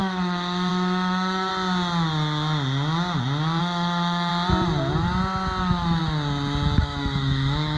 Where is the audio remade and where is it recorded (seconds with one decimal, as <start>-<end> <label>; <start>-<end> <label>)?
0.0-1.5 remade; 1.5-3.6 recorded; 3.6-4.3 remade; 4.3-5.6 recorded; 5.6-6.0 remade; 6.0-6.8 recorded; 6.8-7.8 remade